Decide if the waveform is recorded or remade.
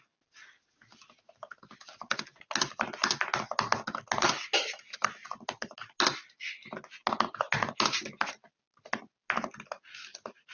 recorded